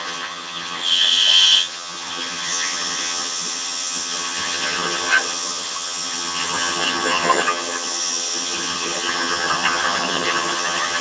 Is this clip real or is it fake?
fake